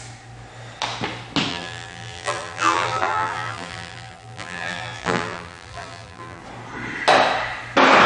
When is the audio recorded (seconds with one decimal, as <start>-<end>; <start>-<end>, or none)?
0.0-1.5; 6.4-8.1